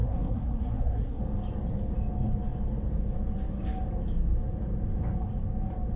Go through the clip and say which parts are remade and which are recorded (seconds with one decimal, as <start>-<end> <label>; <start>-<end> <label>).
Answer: 0.0-1.2 remade; 1.2-6.0 recorded